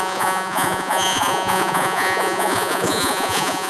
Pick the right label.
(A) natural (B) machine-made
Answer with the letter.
B